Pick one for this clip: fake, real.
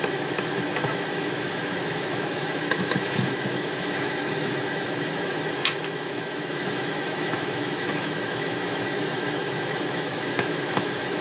fake